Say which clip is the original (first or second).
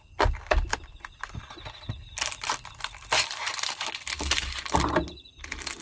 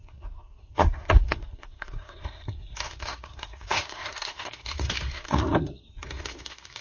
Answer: first